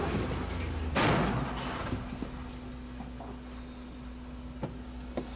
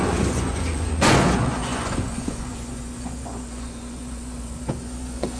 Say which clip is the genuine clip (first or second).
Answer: first